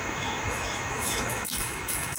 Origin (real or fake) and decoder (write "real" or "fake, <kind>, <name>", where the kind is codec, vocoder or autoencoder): fake, autoencoder, DAC-VAE